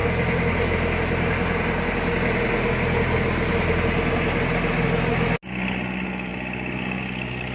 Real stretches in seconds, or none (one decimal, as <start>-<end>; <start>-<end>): 0.0-7.5